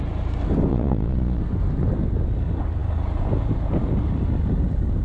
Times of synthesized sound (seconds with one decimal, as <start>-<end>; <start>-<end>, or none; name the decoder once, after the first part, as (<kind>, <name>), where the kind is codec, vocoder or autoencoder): 0.7-1.4 (vocoder, Vocos)